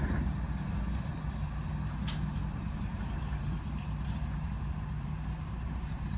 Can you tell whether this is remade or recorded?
remade